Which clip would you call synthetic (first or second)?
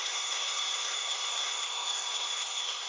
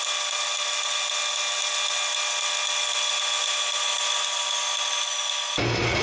first